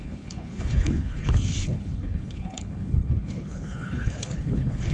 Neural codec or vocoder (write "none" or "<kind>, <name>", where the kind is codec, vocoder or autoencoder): codec, HILCodec